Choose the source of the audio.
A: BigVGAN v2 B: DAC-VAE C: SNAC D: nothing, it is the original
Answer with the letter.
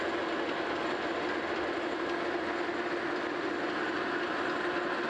D